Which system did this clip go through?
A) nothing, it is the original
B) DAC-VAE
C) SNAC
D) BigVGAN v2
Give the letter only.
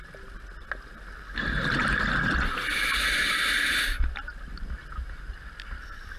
A